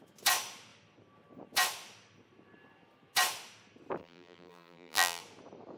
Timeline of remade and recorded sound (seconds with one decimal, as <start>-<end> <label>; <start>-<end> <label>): 0.0-4.0 recorded; 4.0-5.2 remade; 5.2-5.8 recorded